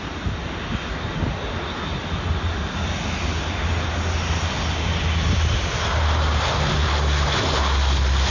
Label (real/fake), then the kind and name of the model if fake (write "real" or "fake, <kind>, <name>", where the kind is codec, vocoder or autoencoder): real